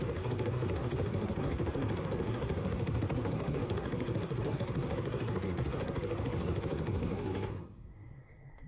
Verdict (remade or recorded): remade